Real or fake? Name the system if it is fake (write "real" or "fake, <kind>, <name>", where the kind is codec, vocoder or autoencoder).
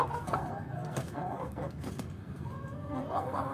fake, codec, SNAC